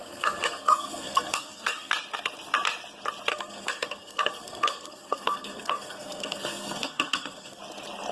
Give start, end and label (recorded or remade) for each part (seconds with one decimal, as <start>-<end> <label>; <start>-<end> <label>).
0.0-1.9 remade; 1.9-3.3 recorded; 3.3-7.6 remade; 7.6-8.1 recorded